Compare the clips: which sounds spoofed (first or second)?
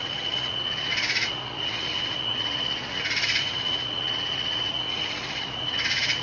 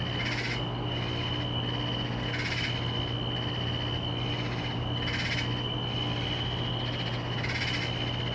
first